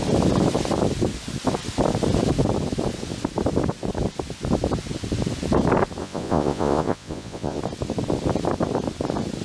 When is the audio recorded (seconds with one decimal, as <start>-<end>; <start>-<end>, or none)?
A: 0.0-6.0; 7.6-9.4

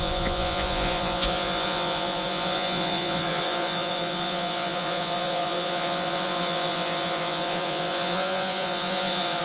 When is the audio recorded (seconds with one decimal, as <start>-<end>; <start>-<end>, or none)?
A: none

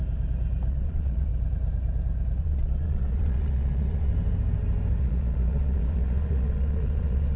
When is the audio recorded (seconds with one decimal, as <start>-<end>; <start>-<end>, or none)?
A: 0.0-0.7; 1.3-2.4; 4.1-5.0